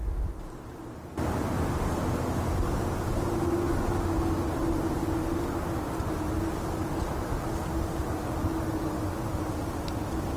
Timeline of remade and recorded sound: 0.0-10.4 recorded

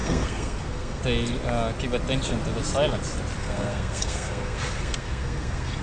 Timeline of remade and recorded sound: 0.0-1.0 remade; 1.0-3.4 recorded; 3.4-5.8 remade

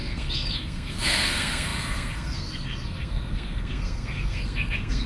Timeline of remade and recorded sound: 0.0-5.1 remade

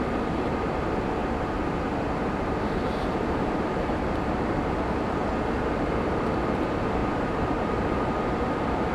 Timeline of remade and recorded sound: 0.0-1.2 recorded; 1.2-3.9 remade; 3.9-7.0 recorded; 7.0-8.9 remade

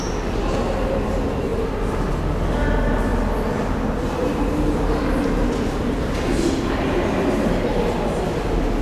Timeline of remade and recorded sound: 0.0-8.8 recorded

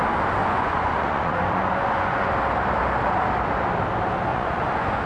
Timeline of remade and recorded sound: 0.0-0.4 recorded; 0.4-2.3 remade; 2.3-4.3 recorded; 4.3-5.1 remade

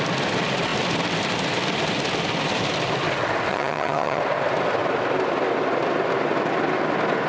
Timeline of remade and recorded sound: 0.0-3.5 recorded; 3.5-4.2 remade; 4.2-7.3 recorded